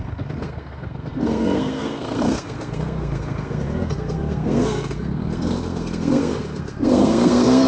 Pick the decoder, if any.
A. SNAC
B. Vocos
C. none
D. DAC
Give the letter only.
A